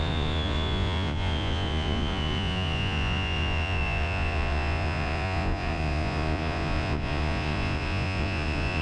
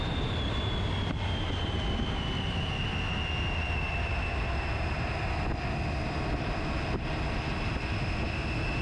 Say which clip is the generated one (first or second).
first